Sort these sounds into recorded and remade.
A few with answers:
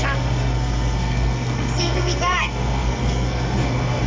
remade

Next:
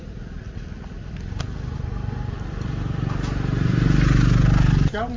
recorded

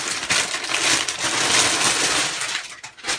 recorded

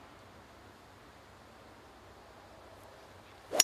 recorded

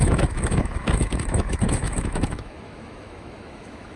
remade